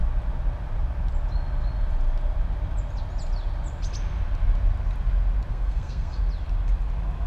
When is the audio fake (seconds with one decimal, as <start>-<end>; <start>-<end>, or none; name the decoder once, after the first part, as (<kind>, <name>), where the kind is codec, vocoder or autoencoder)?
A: 5.5-6.2 (codec, SNAC)